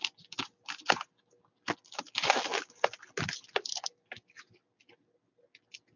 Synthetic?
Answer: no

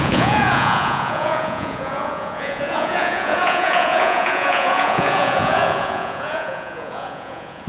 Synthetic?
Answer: yes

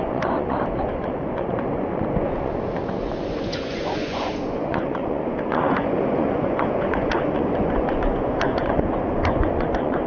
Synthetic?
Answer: yes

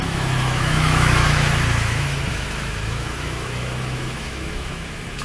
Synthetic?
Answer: yes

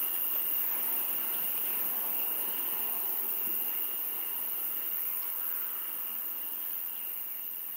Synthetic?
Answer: no